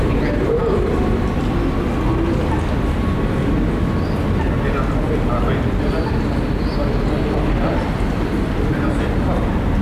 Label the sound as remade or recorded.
recorded